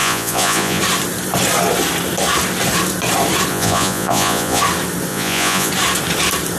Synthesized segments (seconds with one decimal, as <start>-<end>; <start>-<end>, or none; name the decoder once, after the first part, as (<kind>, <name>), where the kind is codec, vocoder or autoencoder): 0.0-0.8 (vocoder, Vocos); 3.5-4.6; 5.1-5.7